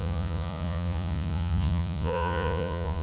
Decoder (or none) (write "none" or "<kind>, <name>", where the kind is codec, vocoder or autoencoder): vocoder, Vocos